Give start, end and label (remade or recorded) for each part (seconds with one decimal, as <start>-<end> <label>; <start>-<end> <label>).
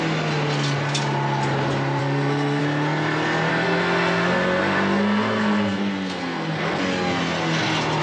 0.0-2.0 recorded; 2.0-2.6 remade; 2.6-3.5 recorded; 3.5-6.8 remade; 6.8-8.0 recorded